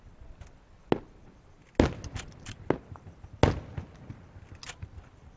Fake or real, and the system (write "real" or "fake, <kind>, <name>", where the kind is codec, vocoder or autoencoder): real